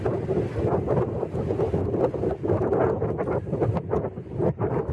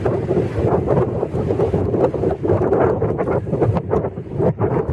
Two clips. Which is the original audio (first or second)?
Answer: first